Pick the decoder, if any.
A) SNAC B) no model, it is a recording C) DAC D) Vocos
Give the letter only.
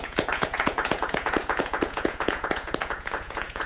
D